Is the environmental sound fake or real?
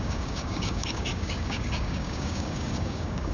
fake